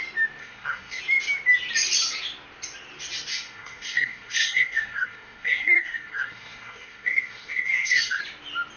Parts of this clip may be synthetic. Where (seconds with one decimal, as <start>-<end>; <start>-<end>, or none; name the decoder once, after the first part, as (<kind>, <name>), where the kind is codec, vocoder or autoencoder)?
0.4-1.0 (codec, SNAC); 3.3-8.2

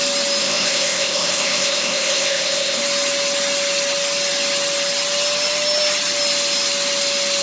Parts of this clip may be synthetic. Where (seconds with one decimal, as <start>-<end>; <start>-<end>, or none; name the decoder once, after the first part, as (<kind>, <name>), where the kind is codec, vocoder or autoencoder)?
0.4-2.8 (codec, ZipCodec)

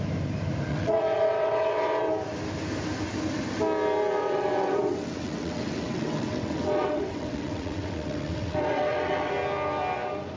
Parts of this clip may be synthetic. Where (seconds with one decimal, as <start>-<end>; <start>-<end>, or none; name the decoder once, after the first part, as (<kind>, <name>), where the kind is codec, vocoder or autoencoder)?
0.7-2.1 (vocoder, WaveNeXt); 4.2-9.3

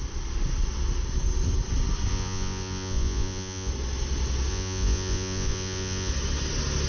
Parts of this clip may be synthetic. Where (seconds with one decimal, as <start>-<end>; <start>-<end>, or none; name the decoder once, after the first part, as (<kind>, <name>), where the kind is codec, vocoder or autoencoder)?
2.1-3.7 (vocoder, Vocos); 4.5-6.1

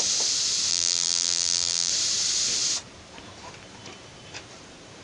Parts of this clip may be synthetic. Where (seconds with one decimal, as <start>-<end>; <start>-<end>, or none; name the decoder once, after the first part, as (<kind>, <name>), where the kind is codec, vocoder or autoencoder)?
0.7-1.9 (vocoder, BigVGAN v2)

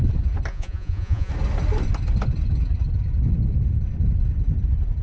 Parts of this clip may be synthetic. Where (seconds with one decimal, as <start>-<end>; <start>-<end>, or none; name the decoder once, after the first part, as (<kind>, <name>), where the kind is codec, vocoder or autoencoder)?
0.5-1.3 (vocoder, Vocos)